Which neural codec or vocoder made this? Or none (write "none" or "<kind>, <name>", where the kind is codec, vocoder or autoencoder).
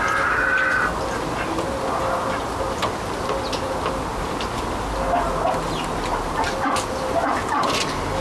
none